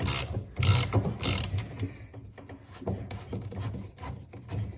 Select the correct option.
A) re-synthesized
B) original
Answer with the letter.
B